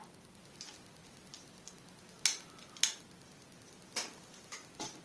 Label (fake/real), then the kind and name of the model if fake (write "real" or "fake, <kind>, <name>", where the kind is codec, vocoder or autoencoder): real